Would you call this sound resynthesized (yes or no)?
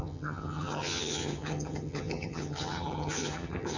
yes